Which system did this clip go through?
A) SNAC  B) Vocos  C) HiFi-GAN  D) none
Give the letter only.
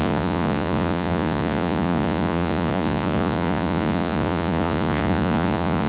B